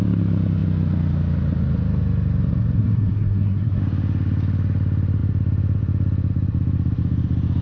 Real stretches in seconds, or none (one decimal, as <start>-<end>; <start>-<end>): 0.0-2.8; 3.8-7.6